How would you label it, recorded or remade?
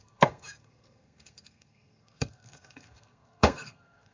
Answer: remade